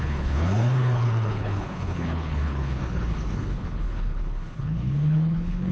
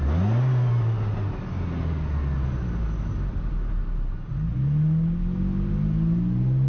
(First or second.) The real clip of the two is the second